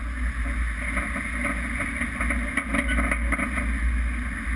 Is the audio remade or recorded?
recorded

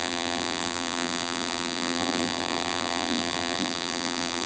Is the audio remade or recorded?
remade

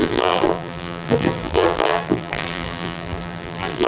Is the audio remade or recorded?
remade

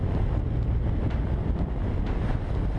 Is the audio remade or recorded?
recorded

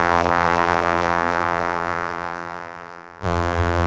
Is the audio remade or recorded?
remade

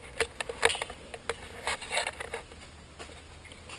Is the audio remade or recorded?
recorded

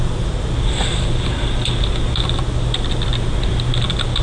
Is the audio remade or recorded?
recorded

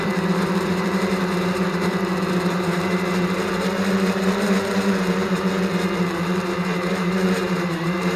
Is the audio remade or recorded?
remade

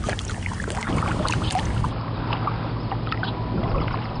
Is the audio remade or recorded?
recorded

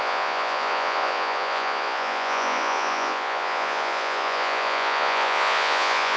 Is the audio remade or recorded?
remade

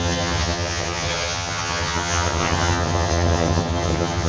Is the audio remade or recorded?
remade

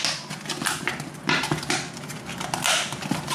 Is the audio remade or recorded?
recorded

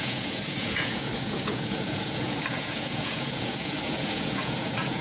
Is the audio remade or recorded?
remade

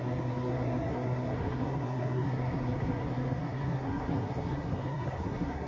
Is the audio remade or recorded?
remade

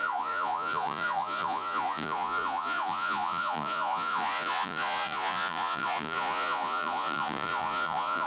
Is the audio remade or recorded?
remade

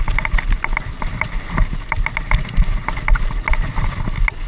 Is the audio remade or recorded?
recorded